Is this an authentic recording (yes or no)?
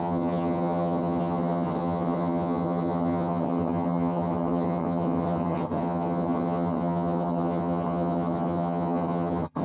no